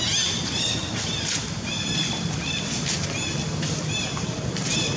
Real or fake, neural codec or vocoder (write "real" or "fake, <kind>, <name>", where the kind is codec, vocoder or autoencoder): real